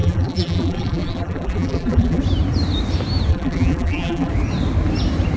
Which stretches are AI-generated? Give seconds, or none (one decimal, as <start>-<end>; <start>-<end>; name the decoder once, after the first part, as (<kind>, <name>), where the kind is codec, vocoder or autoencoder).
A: 0.0-2.2 (vocoder, BigVGAN v2); 3.3-4.3